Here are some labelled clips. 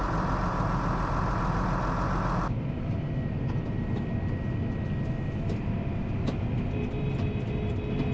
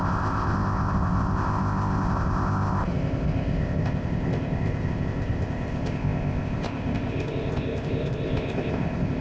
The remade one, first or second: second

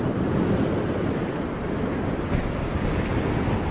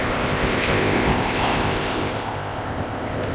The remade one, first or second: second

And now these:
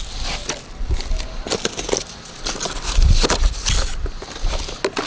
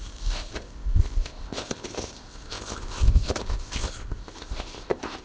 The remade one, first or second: second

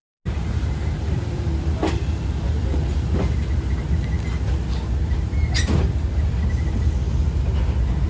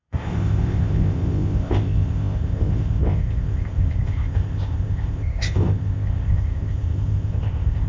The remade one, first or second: second